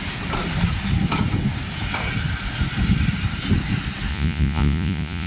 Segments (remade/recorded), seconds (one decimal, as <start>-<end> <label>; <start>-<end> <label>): 0.0-4.1 recorded; 4.1-5.3 remade